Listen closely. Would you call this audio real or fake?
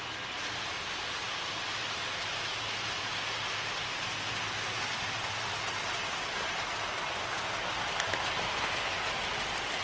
real